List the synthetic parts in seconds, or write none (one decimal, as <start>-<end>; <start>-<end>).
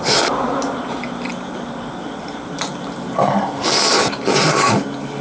none